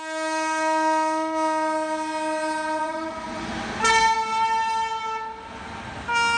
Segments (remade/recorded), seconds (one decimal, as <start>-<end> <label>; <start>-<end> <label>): 0.0-2.8 recorded; 2.8-3.5 remade; 3.5-6.4 recorded